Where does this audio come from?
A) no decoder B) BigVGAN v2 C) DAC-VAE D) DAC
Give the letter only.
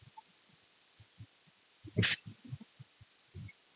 B